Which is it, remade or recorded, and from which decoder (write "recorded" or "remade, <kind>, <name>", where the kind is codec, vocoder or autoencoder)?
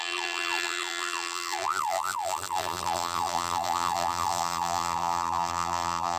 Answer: remade, vocoder, BigVGAN v2